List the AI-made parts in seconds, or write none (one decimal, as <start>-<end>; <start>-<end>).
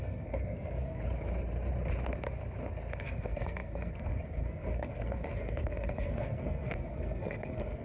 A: 0.0-1.0; 3.0-7.8